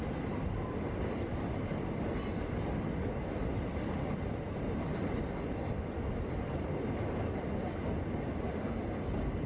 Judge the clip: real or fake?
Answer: real